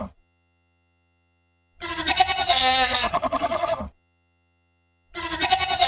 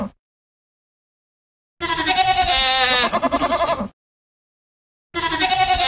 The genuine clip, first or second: second